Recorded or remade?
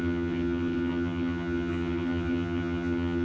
remade